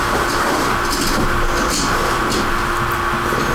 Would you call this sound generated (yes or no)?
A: no